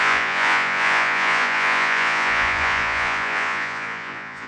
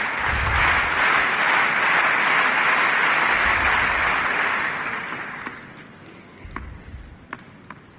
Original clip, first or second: second